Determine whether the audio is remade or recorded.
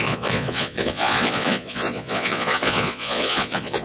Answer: remade